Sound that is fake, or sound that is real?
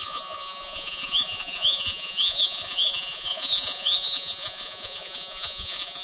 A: fake